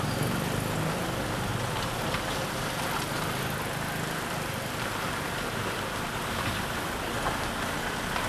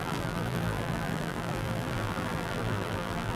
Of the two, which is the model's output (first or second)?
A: second